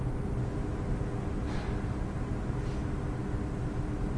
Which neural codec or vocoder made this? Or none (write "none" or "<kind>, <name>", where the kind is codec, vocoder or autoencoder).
none